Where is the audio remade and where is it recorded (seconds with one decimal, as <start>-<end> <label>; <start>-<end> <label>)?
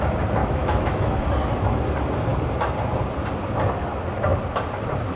0.0-0.4 recorded; 0.4-1.3 remade; 1.3-5.2 recorded